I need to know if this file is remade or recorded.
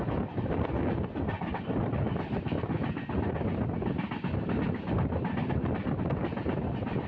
recorded